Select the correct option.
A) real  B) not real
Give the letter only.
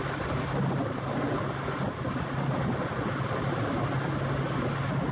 A